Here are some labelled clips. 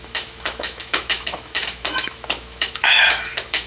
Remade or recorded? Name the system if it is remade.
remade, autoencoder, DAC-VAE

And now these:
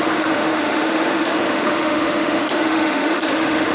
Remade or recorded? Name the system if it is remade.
remade, autoencoder, DAC-VAE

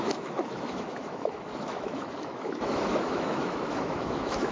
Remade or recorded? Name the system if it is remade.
remade, autoencoder, DAC-VAE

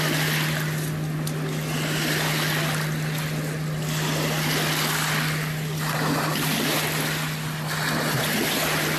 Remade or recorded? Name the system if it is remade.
recorded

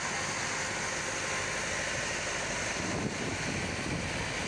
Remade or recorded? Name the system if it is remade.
recorded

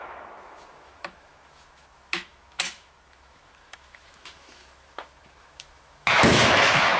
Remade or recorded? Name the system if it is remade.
remade, autoencoder, DAC-VAE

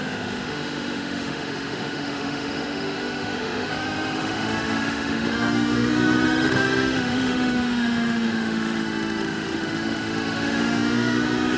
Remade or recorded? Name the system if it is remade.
remade, autoencoder, DAC-VAE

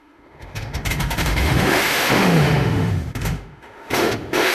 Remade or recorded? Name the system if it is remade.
remade, autoencoder, DAC-VAE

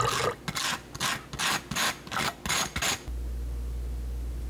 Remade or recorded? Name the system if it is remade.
recorded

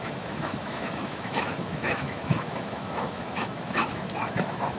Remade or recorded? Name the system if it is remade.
remade, autoencoder, DAC-VAE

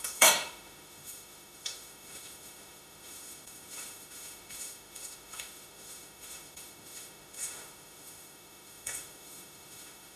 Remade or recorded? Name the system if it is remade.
remade, autoencoder, DAC-VAE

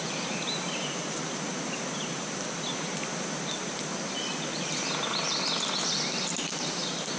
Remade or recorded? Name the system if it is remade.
recorded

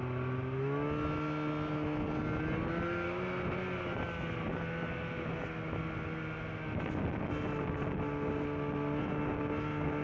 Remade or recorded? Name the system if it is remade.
recorded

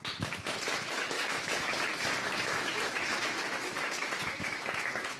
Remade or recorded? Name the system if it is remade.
remade, autoencoder, DAC-VAE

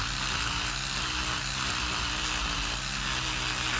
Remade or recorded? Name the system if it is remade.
recorded